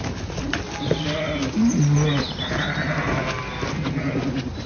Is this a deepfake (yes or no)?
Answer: no